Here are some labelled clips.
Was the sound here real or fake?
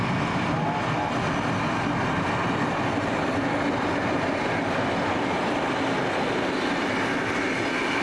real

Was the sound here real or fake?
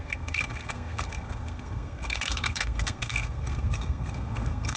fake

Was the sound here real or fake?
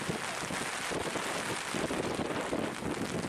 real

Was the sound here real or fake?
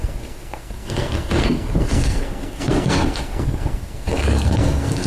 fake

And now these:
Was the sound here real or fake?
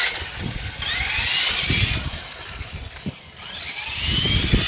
real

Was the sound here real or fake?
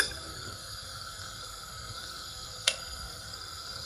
fake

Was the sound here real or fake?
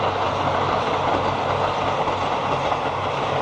real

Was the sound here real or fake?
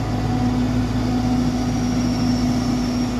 real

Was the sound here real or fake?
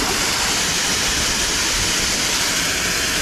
real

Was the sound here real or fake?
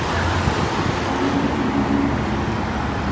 real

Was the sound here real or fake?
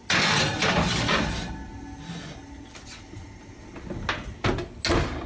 real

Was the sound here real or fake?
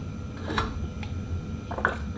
real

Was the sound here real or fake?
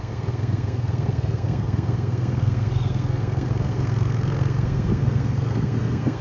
fake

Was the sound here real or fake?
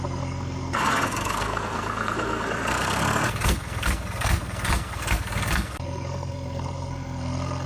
fake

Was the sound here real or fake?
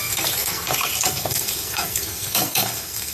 fake